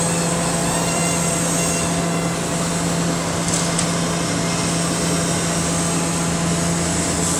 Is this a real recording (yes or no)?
yes